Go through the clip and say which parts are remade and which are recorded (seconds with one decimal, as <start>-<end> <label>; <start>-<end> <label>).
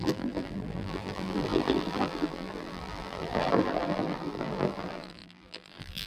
0.0-6.1 remade